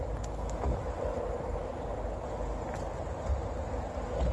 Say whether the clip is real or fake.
real